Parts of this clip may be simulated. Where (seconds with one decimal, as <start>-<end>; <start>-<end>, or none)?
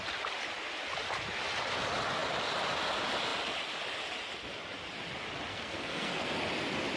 5.5-6.4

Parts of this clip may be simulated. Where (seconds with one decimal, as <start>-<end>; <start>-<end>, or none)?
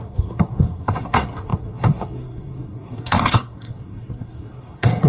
0.0-5.1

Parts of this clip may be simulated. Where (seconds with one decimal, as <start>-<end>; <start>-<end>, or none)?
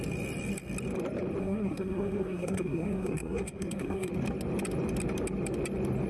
1.4-4.1